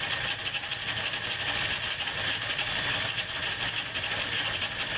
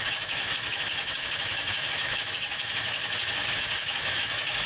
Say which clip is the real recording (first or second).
first